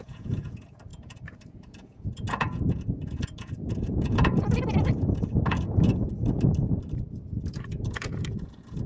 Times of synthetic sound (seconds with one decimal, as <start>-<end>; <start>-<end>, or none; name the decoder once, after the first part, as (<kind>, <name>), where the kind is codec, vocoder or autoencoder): 0.0-5.9 (vocoder, Vocos); 7.5-8.9